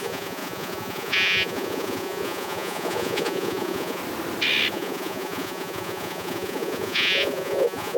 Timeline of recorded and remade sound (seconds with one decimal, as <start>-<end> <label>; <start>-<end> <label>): 0.0-4.0 remade; 4.0-4.7 recorded; 4.7-8.0 remade